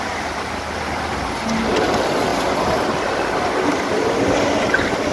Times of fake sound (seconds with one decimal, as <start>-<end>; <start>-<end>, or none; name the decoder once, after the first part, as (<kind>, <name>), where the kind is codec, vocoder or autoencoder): none